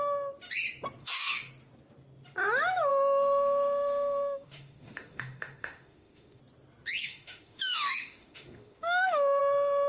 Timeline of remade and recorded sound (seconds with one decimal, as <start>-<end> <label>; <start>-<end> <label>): 0.0-1.0 recorded; 1.0-1.5 remade; 1.5-2.9 recorded; 2.9-6.4 remade; 6.4-7.0 recorded; 7.0-9.4 remade; 9.4-9.9 recorded

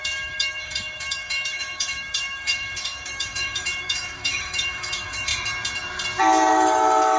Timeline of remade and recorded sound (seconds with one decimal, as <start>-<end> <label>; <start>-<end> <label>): 0.0-5.3 remade; 5.3-6.5 recorded; 6.5-7.2 remade

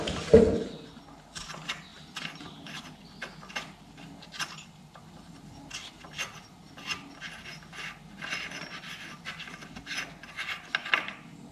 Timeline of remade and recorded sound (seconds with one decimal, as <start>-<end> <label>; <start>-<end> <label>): 0.0-11.5 recorded

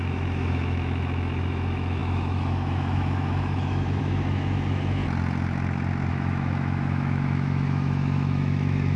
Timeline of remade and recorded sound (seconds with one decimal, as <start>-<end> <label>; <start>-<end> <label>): 0.0-5.0 remade; 5.0-6.1 recorded; 6.1-9.0 remade